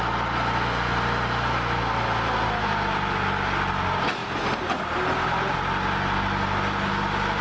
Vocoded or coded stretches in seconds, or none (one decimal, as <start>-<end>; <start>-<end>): none